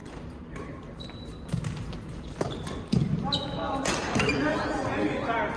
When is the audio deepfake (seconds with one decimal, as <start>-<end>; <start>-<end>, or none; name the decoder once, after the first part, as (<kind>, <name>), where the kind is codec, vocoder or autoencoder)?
none

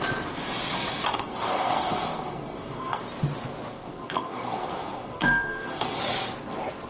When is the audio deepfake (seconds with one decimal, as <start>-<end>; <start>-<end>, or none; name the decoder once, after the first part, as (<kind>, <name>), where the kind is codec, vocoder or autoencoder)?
1.1-3.0 (codec, SNAC); 3.7-6.0